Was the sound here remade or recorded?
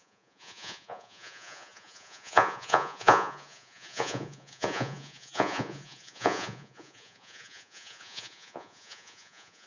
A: remade